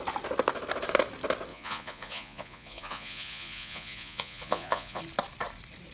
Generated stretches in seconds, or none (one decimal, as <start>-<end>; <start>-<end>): 1.5-5.0